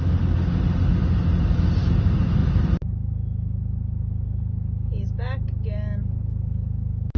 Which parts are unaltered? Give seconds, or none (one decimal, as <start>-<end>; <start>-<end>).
0.0-7.2